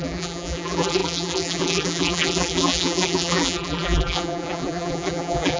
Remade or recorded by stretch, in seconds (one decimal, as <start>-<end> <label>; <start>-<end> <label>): 0.0-5.6 remade